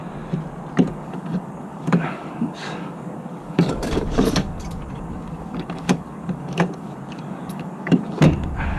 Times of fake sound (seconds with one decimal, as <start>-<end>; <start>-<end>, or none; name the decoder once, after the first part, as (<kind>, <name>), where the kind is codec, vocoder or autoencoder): 0.8-8.8 (codec, DAC)